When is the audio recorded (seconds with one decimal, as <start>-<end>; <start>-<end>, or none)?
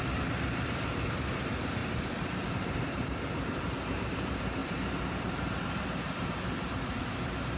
1.8-2.5